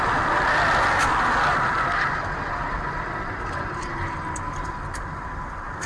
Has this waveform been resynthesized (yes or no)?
no